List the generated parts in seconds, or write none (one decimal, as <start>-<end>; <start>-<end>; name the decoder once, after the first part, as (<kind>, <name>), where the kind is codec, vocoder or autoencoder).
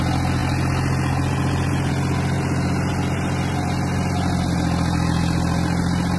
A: none